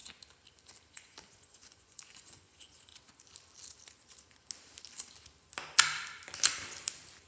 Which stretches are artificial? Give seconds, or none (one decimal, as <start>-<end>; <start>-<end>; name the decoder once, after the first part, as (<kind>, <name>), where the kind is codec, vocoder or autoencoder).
0.9-2.9 (vocoder, Vocos)